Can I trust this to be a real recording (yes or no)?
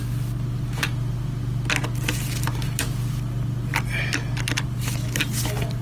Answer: yes